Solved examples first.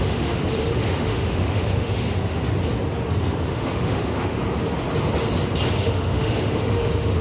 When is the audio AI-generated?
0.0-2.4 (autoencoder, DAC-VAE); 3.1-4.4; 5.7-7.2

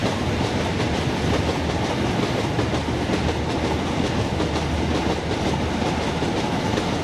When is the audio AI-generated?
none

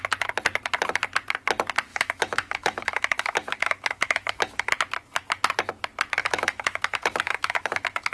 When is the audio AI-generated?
1.9-4.7 (autoencoder, DAC-VAE); 6.2-8.1

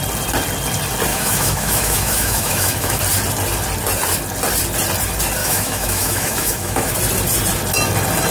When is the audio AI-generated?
1.1-3.0 (autoencoder, DAC-VAE); 5.4-6.9

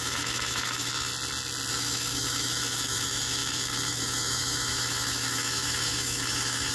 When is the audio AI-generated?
0.0-1.1 (autoencoder, DAC-VAE); 1.7-6.7

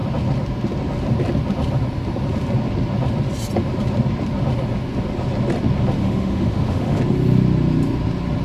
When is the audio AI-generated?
6.0-7.0 (autoencoder, DAC-VAE)

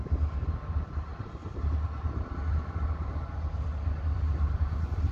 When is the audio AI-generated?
none